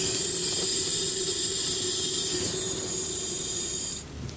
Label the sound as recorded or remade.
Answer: recorded